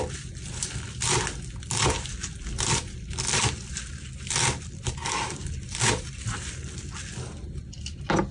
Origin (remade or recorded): recorded